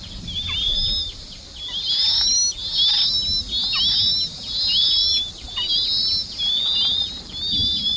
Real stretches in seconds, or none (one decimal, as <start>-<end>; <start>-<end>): 0.0-8.0

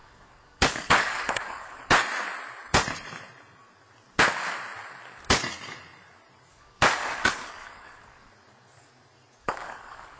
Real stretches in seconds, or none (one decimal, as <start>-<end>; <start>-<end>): 1.8-6.5; 8.3-9.4

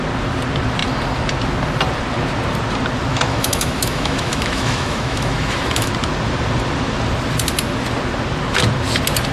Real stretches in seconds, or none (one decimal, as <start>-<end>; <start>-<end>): 0.0-3.1; 5.9-9.3

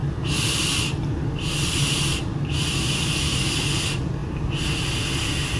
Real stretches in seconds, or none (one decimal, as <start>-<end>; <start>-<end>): 0.0-5.6